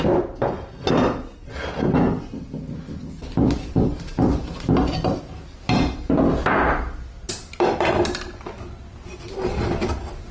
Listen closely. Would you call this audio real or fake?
real